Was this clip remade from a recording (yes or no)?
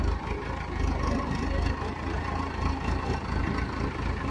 no